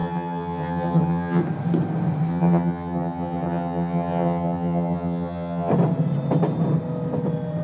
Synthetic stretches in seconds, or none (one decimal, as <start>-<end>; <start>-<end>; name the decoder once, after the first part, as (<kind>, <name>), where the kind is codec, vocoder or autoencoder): 0.0-1.4 (vocoder, HiFi-GAN); 2.3-5.7